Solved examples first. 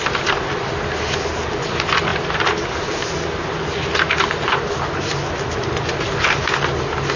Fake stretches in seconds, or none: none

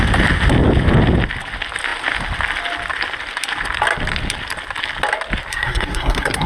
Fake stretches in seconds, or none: 5.5-6.5 (codec, SNAC)

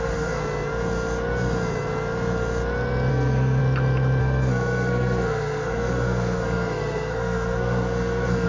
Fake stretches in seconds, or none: 0.0-0.4 (codec, SNAC); 3.1-3.6; 4.2-8.5

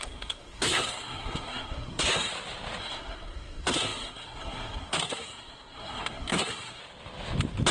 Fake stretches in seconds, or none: 0.0-2.3 (codec, SNAC); 2.8-6.8

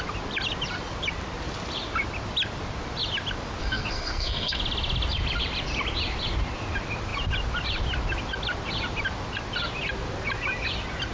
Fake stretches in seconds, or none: 3.6-4.6 (codec, SNAC)

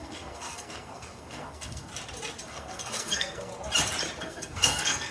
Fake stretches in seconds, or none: 0.0-1.9 (codec, SNAC); 2.5-3.5; 4.2-5.1